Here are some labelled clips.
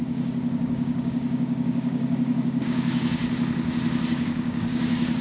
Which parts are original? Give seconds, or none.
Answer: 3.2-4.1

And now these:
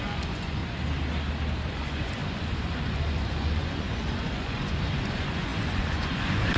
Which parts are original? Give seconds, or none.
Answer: 0.6-1.7

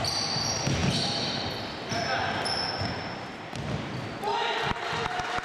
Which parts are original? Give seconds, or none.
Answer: 0.0-5.4

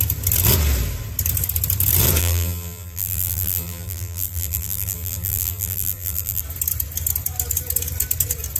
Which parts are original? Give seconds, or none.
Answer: 0.0-2.2; 6.4-8.6

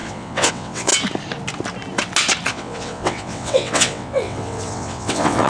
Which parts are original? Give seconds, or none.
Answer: 0.9-2.5

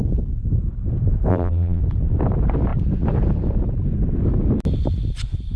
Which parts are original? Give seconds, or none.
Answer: 0.0-1.3; 1.8-5.6